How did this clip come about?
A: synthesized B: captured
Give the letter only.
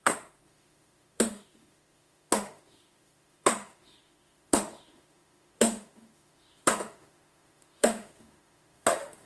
A